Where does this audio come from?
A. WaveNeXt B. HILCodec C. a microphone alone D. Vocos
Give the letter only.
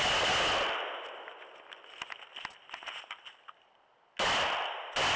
C